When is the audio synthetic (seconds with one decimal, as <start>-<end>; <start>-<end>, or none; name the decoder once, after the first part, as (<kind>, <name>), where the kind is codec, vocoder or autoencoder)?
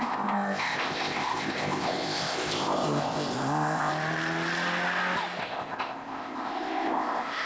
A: 0.0-3.9 (codec, ZipCodec); 5.4-7.5